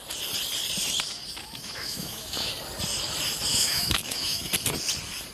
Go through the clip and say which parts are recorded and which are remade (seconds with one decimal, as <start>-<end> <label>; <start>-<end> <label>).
0.0-1.4 recorded; 1.4-2.5 remade; 2.5-3.5 recorded; 3.5-4.5 remade; 4.5-5.3 recorded